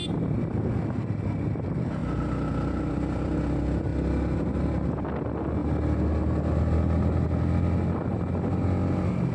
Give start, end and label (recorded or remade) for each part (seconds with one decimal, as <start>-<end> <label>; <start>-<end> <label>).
0.0-9.3 recorded